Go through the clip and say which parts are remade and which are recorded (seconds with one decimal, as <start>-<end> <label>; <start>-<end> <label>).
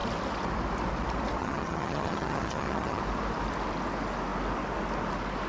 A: 0.0-1.4 recorded; 1.4-3.0 remade; 3.0-5.5 recorded